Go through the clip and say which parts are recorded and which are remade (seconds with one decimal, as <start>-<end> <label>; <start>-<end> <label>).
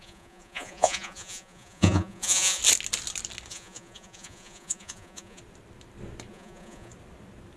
0.0-2.6 remade; 2.6-3.5 recorded; 3.5-5.4 remade; 5.4-6.3 recorded; 6.3-6.9 remade; 6.9-7.6 recorded